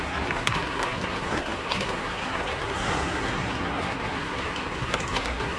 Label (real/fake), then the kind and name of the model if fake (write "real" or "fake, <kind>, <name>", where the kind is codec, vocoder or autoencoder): fake, codec, SNAC